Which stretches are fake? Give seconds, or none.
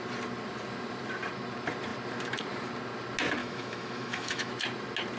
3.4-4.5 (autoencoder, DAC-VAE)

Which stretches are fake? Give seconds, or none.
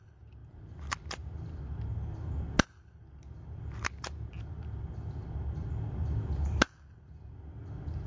none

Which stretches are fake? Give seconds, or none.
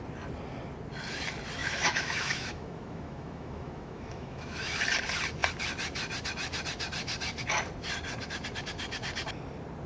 1.6-4.8 (autoencoder, DAC-VAE)